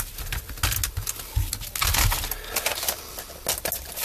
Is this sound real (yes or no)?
yes